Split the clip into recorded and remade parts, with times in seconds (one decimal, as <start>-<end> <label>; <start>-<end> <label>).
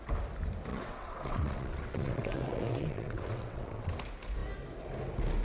0.0-0.7 recorded; 0.7-3.9 remade; 3.9-5.4 recorded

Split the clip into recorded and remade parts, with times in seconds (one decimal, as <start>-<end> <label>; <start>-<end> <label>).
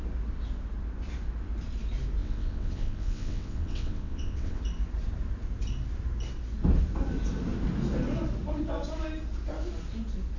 0.0-2.2 recorded; 2.2-4.6 remade; 4.6-10.4 recorded